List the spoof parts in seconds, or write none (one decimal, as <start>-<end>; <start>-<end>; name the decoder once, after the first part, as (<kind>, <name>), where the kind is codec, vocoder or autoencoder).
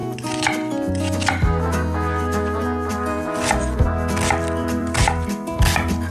2.9-6.1 (vocoder, BigVGAN v2)